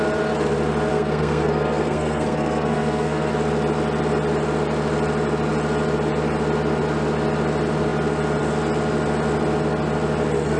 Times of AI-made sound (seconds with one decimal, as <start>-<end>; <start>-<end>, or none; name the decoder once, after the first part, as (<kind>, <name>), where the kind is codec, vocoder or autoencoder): 0.9-3.3 (codec, SNAC)